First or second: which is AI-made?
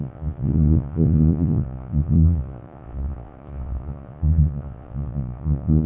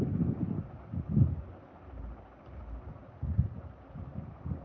first